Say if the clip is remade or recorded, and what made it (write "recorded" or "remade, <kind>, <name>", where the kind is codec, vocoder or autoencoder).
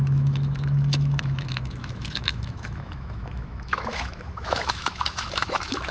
remade, autoencoder, DAC-VAE